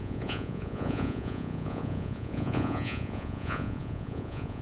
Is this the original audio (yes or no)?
no